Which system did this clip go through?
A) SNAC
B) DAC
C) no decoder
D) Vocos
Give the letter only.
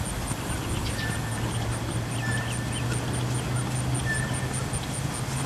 C